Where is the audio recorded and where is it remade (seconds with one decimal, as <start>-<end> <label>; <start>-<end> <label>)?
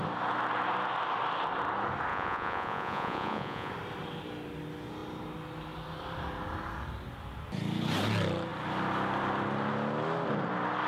0.0-2.1 recorded; 2.1-3.7 remade; 3.7-10.9 recorded